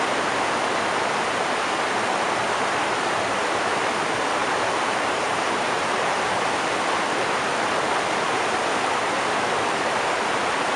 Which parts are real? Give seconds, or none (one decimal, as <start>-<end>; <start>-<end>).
0.0-4.4; 6.3-10.8